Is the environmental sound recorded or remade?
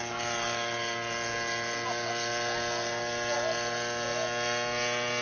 recorded